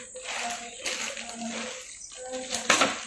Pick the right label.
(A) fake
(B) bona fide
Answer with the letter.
B